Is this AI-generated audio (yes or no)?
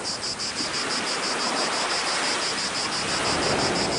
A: no